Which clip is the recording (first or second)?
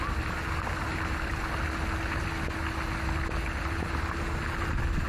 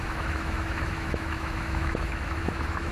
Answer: first